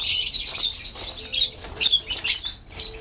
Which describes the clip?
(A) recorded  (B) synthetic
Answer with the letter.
A